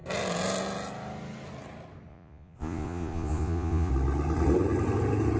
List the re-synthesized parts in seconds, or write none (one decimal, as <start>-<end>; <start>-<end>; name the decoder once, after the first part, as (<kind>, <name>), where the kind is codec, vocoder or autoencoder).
2.1-3.9 (vocoder, Vocos)